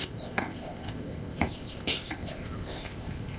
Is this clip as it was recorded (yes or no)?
no